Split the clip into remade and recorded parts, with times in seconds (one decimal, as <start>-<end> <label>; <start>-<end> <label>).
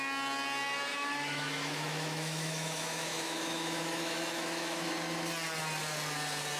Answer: 0.0-0.9 recorded; 0.9-4.9 remade; 4.9-6.6 recorded